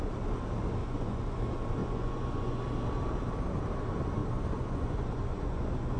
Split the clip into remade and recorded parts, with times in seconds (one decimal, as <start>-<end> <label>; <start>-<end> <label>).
0.0-0.8 recorded; 0.8-1.4 remade; 1.4-1.8 recorded; 1.8-2.6 remade; 2.6-4.2 recorded; 4.2-6.0 remade